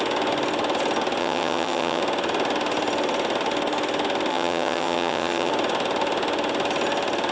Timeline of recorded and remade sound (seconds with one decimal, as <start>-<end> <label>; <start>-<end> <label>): 0.0-1.2 recorded; 1.2-2.0 remade; 2.0-4.3 recorded; 4.3-5.5 remade; 5.5-7.3 recorded

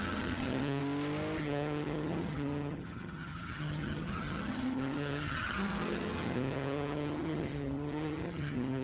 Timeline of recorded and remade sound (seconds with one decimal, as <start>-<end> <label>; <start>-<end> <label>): 0.0-0.8 remade; 0.8-1.4 recorded; 1.4-8.8 remade